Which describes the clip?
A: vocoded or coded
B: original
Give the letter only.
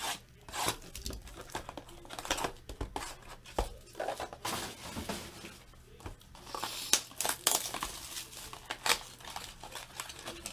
B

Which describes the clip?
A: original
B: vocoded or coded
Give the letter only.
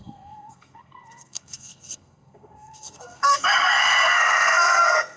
B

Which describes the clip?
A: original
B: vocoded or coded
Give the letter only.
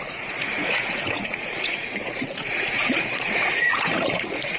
B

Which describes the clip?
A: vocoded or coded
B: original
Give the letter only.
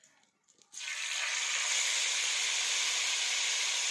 B